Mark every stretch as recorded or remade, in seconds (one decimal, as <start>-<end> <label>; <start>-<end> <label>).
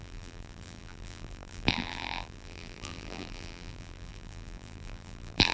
0.0-5.5 remade